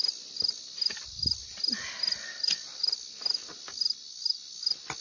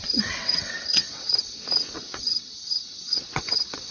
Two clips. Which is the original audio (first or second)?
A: first